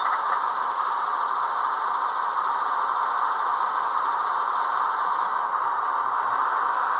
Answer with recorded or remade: recorded